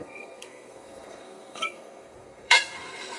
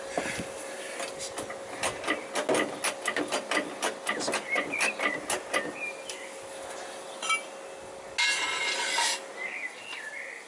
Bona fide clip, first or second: second